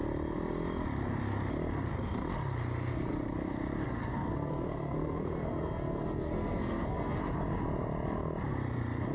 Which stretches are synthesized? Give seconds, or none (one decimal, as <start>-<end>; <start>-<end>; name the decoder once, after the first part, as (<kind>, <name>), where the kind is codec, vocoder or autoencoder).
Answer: 3.8-7.2 (codec, SNAC)